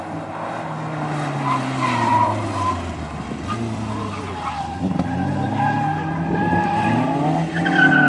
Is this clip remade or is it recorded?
recorded